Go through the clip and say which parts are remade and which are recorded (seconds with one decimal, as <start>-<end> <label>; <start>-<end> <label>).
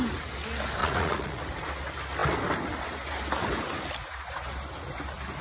0.0-0.8 recorded; 0.8-1.4 remade; 1.4-5.4 recorded